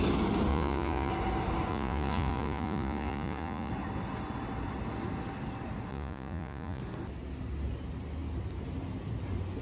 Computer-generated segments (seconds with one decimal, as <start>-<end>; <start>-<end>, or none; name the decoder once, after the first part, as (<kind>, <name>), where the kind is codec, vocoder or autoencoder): 0.5-1.1 (vocoder, Vocos); 1.7-3.7; 5.9-6.8